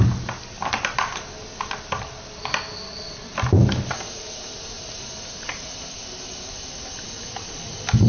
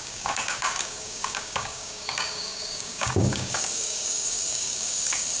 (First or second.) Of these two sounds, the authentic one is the first